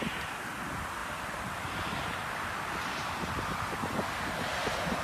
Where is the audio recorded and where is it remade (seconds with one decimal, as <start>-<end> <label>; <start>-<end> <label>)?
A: 0.0-5.0 recorded